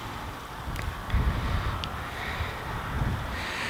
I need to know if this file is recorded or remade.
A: recorded